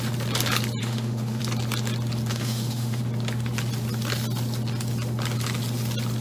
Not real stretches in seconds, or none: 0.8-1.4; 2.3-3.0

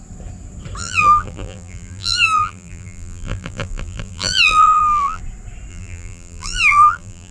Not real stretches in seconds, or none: 0.8-5.2; 5.7-7.3

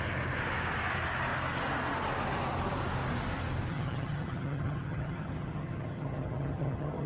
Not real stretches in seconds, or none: 3.7-7.1

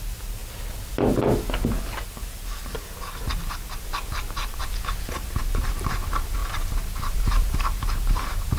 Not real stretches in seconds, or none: 0.0-0.4; 3.4-4.4; 5.4-8.6

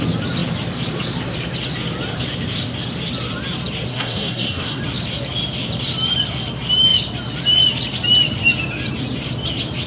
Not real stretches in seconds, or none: 3.9-4.8

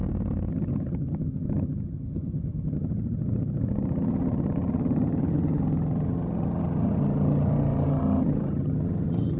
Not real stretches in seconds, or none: 0.5-9.4

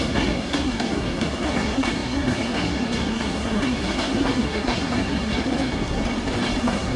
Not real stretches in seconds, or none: 0.0-6.0; 6.6-7.0